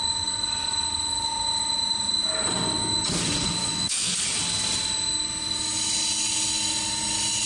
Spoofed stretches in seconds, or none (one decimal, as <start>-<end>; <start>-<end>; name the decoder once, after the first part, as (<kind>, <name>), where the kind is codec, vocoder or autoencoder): 3.6-4.1 (autoencoder, DAC-VAE)